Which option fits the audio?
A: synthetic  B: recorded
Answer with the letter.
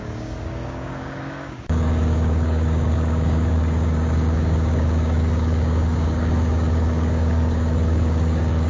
A